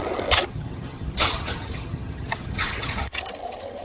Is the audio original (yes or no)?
no